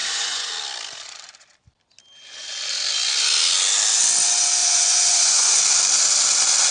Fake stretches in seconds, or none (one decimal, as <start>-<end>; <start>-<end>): 0.0-0.5; 4.6-5.6